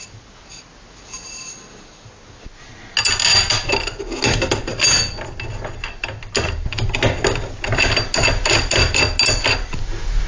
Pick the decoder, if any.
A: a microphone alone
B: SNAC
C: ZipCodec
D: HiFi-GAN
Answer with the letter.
A